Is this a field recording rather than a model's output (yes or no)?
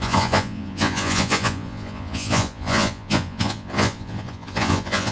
no